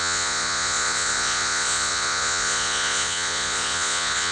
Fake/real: fake